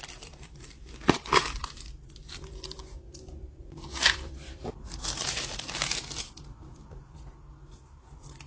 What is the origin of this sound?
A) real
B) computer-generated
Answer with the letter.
B